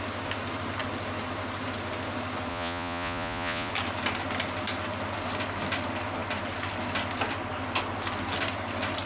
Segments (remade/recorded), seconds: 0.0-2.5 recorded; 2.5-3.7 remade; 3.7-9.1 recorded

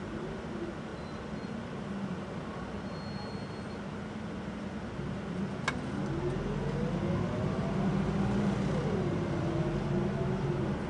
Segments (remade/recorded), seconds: 0.0-10.9 recorded

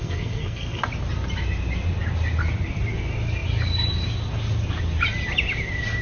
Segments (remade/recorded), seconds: 0.0-0.8 remade; 0.8-6.0 recorded

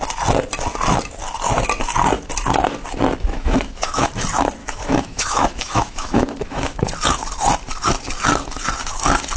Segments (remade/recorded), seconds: 0.0-3.3 recorded; 3.3-4.1 remade; 4.1-4.6 recorded; 4.6-6.8 remade; 6.8-9.4 recorded